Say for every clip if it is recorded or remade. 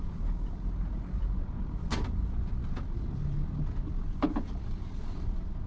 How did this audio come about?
recorded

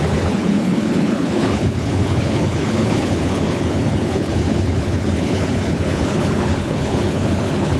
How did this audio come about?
remade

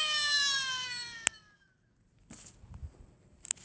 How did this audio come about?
recorded